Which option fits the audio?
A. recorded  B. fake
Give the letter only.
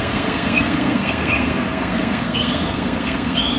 B